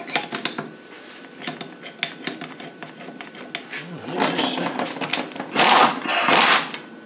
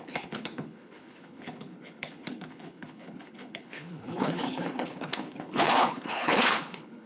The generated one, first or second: second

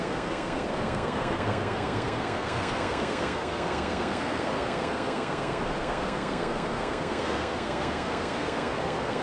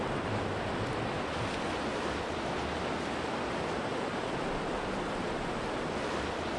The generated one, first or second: first